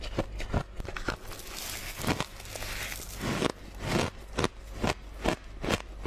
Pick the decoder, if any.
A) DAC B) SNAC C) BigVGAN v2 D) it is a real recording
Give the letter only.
D